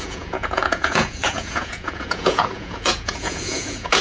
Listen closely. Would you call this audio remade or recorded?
remade